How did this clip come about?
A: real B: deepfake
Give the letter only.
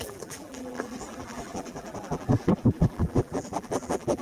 B